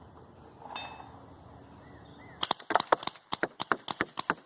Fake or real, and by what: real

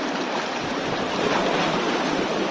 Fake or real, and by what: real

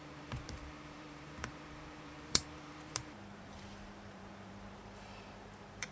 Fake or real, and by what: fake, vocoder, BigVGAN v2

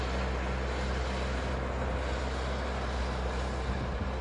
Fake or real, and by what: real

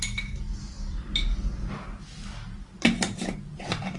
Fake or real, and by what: real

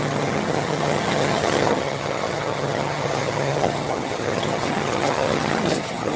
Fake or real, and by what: fake, vocoder, HiFi-GAN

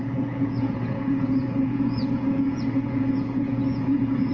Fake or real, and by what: fake, vocoder, Vocos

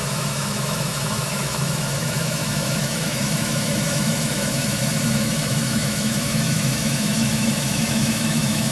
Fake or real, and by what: fake, autoencoder, DAC-VAE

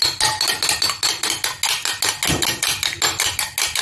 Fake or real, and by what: real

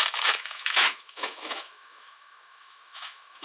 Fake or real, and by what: fake, autoencoder, DAC-VAE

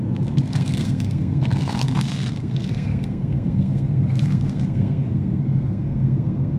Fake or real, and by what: fake, codec, SNAC